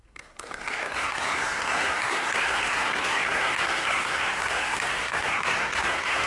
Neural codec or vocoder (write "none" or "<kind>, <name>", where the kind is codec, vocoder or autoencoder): codec, SNAC